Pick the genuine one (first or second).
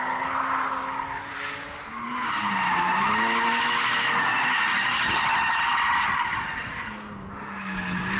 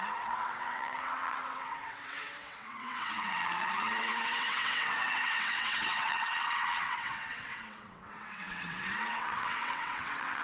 first